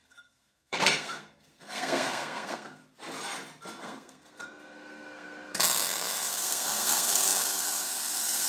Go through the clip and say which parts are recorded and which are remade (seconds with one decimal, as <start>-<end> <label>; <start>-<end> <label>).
0.0-2.8 remade; 2.8-3.8 recorded; 3.8-8.5 remade